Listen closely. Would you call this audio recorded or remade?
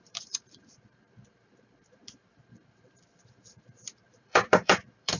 remade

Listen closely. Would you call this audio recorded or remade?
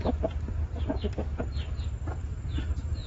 recorded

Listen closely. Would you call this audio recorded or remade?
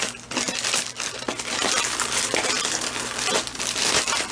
remade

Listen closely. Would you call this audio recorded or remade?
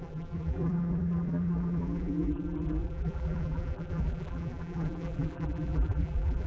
remade